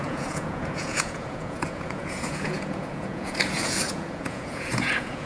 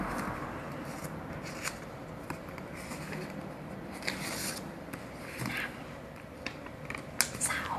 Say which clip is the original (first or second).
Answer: second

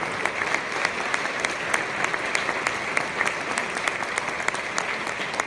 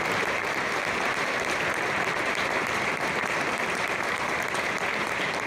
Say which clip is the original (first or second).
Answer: first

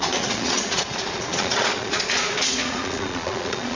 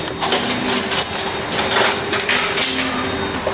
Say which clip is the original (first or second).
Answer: second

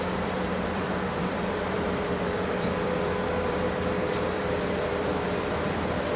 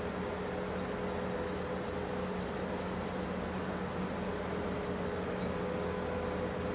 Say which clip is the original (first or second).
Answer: second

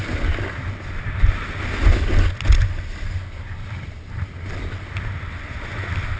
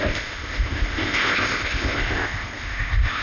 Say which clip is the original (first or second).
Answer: first